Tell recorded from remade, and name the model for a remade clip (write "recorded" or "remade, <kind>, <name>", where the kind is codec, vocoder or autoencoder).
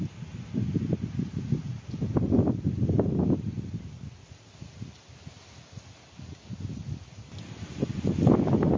recorded